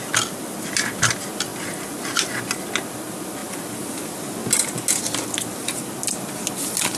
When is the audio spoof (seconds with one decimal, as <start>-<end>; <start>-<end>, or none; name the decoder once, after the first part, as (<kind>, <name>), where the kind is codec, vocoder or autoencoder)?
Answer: none